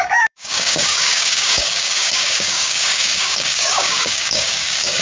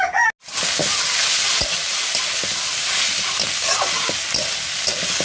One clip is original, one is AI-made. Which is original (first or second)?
second